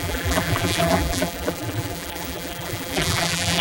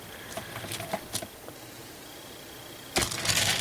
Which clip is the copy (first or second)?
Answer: first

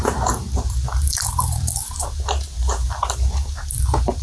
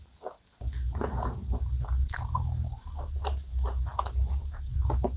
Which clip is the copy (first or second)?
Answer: first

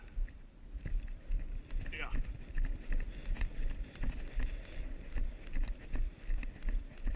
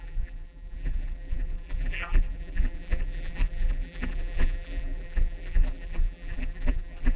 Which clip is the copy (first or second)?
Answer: second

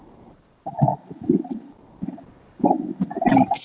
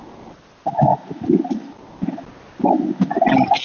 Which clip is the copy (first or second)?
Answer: first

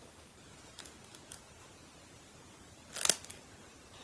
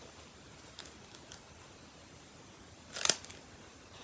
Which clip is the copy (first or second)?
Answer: second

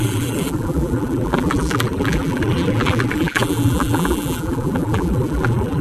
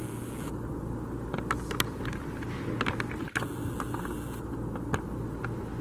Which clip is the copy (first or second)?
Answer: first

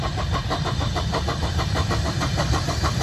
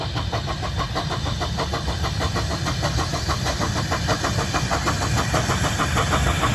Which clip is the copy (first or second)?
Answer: first